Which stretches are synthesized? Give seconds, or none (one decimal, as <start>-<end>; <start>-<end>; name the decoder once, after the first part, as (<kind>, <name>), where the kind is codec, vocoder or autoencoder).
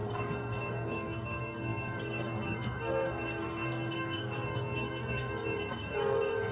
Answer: 0.0-6.5 (codec, SNAC)